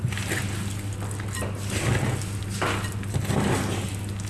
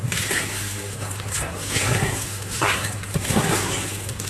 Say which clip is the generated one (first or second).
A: second